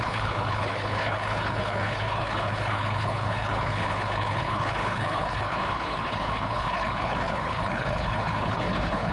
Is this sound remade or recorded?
remade